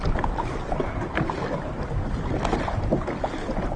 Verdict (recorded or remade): recorded